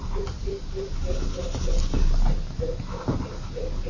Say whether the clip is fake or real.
real